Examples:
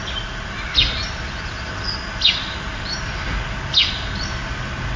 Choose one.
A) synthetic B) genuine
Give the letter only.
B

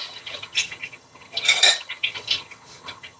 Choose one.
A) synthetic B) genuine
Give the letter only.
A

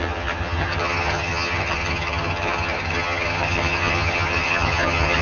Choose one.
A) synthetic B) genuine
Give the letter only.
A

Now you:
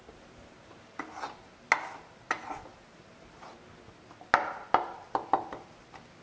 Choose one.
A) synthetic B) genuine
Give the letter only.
B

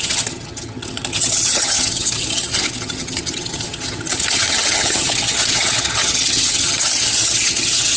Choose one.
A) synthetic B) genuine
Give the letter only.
A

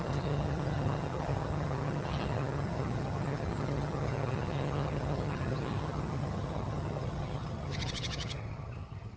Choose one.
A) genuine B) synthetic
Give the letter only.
B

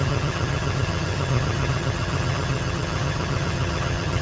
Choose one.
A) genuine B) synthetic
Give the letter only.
B